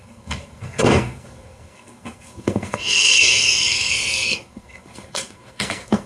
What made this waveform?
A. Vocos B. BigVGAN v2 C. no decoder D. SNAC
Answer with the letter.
D